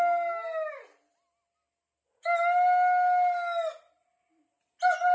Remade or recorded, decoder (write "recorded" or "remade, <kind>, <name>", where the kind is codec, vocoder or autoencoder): recorded